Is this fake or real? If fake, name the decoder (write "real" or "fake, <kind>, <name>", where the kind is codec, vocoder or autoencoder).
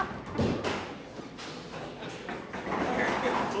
real